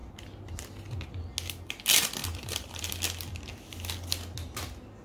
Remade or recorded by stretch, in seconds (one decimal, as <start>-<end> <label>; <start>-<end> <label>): 0.0-2.2 recorded; 2.2-2.9 remade; 2.9-5.0 recorded